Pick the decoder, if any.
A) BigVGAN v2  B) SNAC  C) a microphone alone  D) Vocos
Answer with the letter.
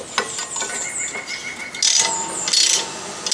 C